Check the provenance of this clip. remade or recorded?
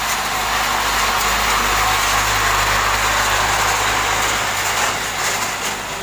recorded